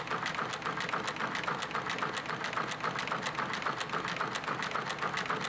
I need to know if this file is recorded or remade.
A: recorded